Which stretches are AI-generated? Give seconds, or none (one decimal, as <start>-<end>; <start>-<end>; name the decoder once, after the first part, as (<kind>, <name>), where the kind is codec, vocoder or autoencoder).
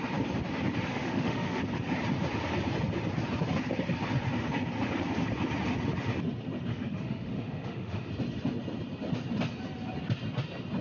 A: 0.9-1.6 (autoencoder, DAC-VAE); 6.7-8.1